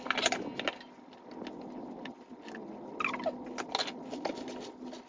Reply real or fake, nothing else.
real